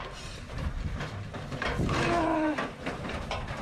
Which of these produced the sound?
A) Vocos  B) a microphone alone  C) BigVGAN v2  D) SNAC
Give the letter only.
C